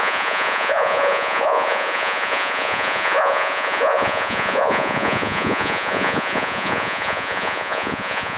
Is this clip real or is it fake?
fake